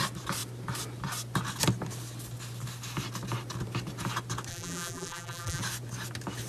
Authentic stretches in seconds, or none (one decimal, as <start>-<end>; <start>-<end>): 0.0-4.5; 5.6-6.5